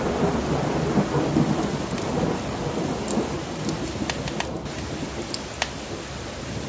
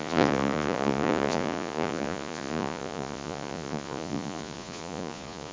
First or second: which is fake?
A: second